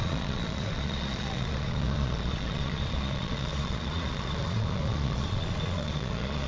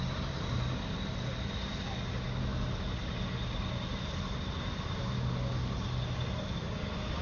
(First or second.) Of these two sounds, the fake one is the first